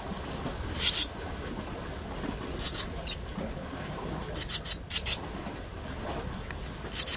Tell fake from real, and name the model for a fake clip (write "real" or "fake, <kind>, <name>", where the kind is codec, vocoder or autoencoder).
real